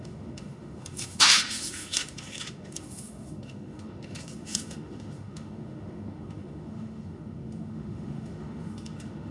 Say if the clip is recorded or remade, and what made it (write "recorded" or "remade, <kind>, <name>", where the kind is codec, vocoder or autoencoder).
remade, autoencoder, DAC-VAE